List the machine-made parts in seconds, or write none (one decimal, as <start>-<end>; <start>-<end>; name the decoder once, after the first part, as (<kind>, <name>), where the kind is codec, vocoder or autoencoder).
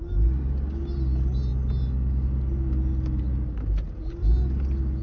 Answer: none